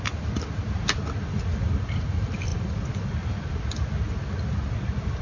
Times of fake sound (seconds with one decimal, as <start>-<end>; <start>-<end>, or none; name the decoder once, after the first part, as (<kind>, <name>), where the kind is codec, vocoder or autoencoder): none